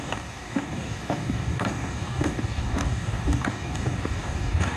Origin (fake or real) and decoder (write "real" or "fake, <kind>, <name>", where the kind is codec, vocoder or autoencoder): fake, codec, DAC